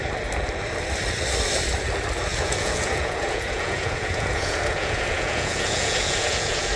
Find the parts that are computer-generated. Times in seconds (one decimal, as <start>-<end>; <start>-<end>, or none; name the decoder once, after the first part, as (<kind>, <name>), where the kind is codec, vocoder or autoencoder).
2.3-6.8 (vocoder, Vocos)

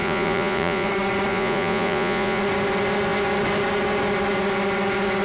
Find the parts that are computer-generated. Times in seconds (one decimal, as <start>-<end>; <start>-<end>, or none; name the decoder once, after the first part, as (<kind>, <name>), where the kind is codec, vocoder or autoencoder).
0.0-0.9 (vocoder, Vocos); 1.3-2.4

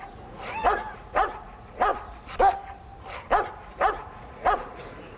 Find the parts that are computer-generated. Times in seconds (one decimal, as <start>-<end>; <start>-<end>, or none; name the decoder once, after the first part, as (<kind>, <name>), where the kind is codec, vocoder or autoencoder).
0.0-1.9 (vocoder, Vocos); 3.7-5.2

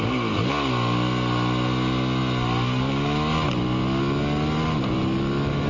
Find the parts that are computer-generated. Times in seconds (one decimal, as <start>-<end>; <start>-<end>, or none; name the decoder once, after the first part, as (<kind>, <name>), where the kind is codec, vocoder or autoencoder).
none

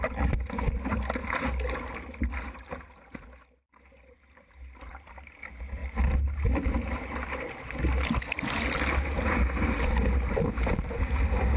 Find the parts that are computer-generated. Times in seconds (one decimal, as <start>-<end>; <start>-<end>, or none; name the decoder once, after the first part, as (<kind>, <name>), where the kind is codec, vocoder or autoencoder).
none